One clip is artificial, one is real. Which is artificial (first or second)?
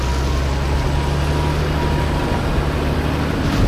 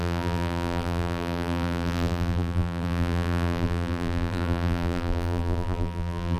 second